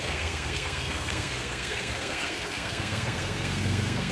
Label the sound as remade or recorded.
remade